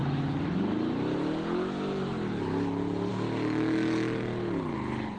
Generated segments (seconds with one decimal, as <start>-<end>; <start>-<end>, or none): none

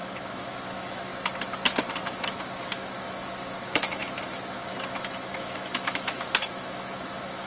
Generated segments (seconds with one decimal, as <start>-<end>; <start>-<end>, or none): 0.0-1.1; 2.1-7.5